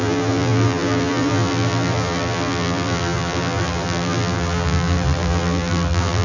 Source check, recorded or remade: remade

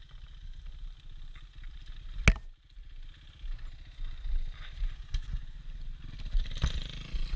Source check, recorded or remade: recorded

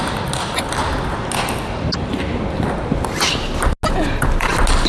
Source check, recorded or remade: recorded